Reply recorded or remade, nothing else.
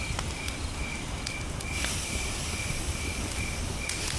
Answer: recorded